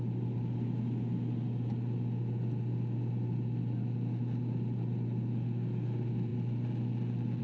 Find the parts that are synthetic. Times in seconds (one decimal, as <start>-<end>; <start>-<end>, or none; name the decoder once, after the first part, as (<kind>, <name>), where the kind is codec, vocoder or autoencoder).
none